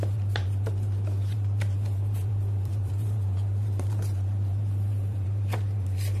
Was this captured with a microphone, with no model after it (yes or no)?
no